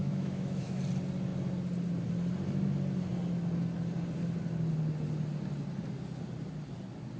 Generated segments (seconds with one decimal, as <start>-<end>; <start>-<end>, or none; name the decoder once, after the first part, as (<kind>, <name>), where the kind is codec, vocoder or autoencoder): 0.0-0.8 (autoencoder, DAC-VAE)